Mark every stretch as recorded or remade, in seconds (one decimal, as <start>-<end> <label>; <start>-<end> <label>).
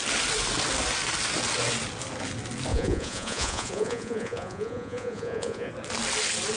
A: 0.0-2.7 recorded; 2.7-5.7 remade; 5.7-6.6 recorded